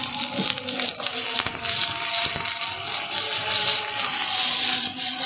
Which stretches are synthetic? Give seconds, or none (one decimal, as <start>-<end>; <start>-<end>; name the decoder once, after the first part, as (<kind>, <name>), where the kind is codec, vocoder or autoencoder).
none